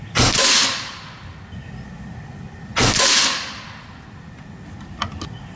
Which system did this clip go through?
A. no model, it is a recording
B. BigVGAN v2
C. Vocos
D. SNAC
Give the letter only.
A